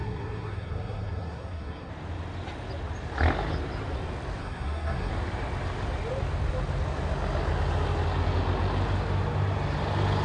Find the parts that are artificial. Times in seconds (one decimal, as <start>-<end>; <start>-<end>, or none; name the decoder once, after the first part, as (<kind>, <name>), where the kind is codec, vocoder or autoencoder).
0.0-1.9 (codec, SNAC); 4.4-5.1